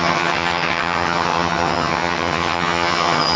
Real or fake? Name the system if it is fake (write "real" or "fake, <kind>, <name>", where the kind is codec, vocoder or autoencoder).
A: fake, vocoder, HiFi-GAN